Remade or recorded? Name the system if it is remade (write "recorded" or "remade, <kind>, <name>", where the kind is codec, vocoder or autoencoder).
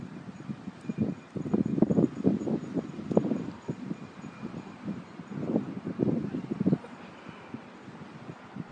remade, vocoder, BigVGAN v2